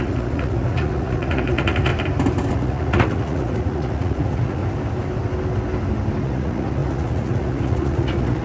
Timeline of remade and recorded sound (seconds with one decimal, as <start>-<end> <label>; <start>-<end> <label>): 0.0-1.9 remade; 1.9-2.5 recorded; 2.5-4.6 remade; 4.6-6.2 recorded; 6.2-8.4 remade